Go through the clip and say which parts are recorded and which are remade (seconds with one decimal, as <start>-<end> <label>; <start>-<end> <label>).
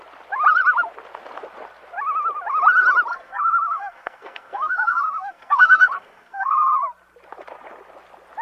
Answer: 0.0-3.1 recorded; 3.1-6.7 remade; 6.7-8.4 recorded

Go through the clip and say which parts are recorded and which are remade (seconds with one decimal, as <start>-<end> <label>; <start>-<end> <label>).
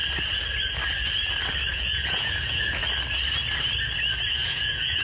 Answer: 0.0-1.7 recorded; 1.7-2.8 remade; 2.8-4.3 recorded; 4.3-5.0 remade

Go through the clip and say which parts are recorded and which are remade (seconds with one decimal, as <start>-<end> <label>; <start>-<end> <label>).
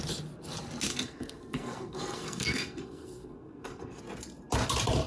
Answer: 0.0-0.9 recorded; 0.9-4.0 remade; 4.0-5.1 recorded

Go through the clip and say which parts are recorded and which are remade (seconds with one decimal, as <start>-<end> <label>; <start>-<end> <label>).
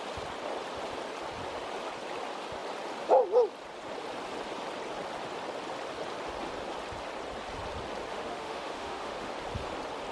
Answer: 0.0-8.1 recorded; 8.1-9.3 remade; 9.3-10.1 recorded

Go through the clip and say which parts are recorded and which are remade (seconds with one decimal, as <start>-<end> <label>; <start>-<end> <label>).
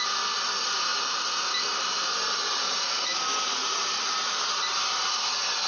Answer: 0.0-3.6 recorded; 3.6-5.1 remade; 5.1-5.7 recorded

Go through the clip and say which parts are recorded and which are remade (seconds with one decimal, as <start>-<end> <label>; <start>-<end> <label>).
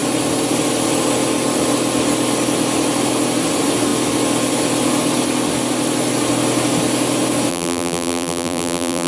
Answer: 0.0-7.5 recorded; 7.5-9.1 remade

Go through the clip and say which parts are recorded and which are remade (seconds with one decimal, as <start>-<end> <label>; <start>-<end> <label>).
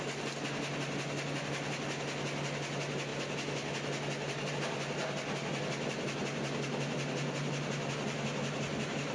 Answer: 0.0-9.1 recorded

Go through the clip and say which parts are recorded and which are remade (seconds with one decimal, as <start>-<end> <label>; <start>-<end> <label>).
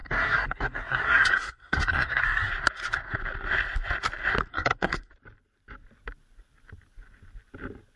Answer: 0.0-2.5 remade; 2.5-4.5 recorded; 4.5-5.1 remade; 5.1-8.0 recorded